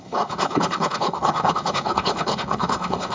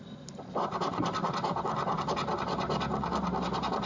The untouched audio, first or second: second